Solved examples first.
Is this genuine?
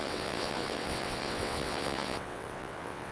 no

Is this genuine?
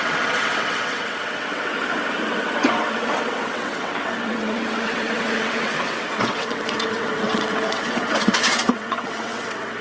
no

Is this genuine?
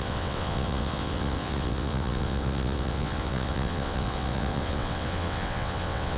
no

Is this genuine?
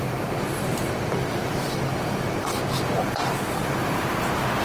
no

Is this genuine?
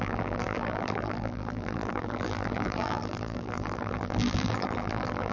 no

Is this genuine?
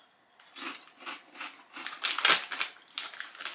yes